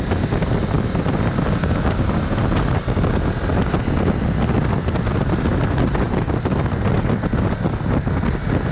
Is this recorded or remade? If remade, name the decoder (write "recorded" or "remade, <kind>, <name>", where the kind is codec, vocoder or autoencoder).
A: recorded